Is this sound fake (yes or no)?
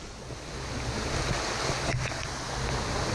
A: no